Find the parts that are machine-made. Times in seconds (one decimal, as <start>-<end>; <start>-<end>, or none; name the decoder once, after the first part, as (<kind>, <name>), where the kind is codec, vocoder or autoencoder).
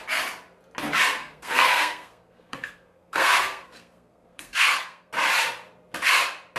1.2-5.1 (codec, SNAC)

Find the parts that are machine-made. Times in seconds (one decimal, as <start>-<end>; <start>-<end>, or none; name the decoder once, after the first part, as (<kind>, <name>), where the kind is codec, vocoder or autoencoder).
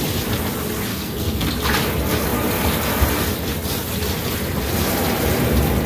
0.9-1.5 (codec, SNAC)